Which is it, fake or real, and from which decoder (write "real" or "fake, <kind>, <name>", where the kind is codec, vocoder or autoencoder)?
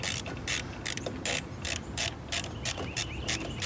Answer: fake, vocoder, BigVGAN v2